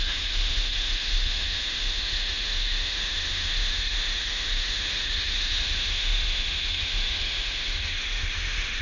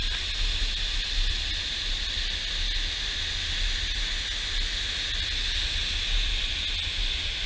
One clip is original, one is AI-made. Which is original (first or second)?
second